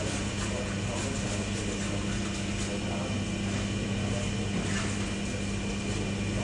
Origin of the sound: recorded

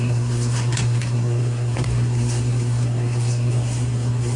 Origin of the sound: remade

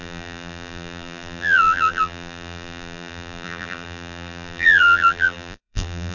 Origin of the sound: remade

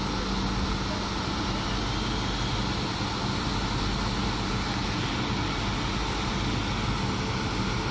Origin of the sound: recorded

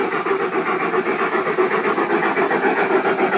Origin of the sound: recorded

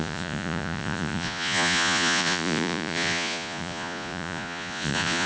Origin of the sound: remade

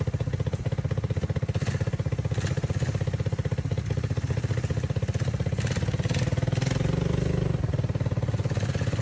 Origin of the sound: recorded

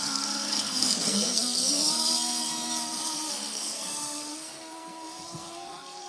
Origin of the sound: remade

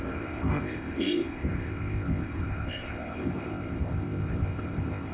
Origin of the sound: remade